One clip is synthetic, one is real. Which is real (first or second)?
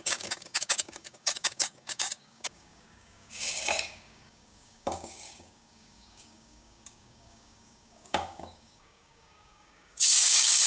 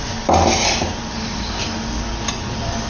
second